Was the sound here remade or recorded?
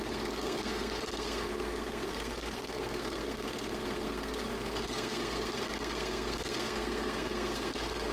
remade